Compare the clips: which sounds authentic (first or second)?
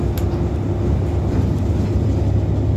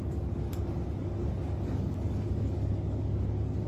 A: first